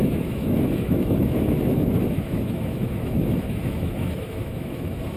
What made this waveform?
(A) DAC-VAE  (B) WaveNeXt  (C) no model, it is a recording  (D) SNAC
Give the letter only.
A